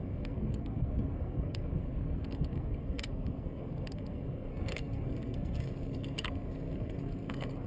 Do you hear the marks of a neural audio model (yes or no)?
yes